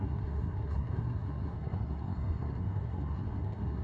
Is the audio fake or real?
fake